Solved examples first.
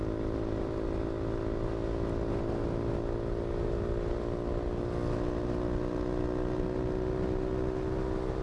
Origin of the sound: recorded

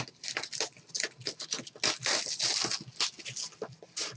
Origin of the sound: recorded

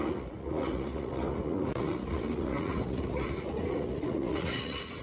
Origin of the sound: remade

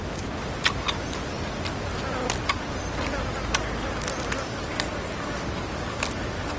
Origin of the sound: recorded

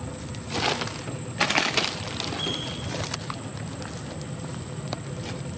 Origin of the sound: recorded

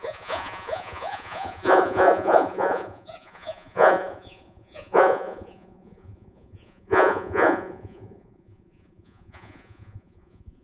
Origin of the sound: remade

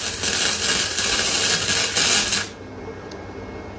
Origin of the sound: recorded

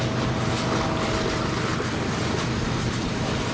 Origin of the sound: recorded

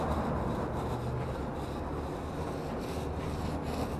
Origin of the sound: recorded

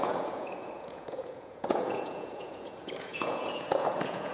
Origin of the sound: remade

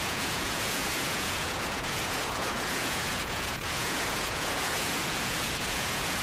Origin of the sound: remade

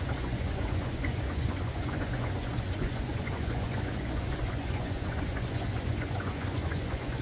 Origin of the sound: remade